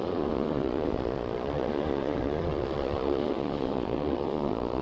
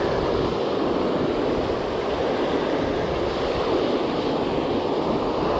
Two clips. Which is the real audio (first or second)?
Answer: second